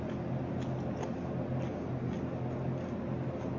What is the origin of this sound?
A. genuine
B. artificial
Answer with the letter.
A